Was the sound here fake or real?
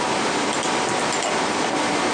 real